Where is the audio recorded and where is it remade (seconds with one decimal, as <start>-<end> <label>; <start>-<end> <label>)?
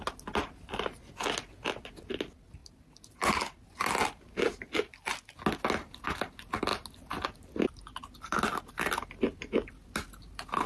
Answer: 0.0-10.7 recorded